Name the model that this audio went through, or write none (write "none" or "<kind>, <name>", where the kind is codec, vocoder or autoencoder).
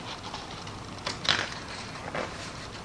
none